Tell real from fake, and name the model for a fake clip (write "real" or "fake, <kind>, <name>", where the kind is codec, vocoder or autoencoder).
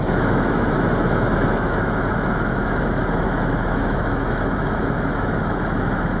fake, autoencoder, DAC-VAE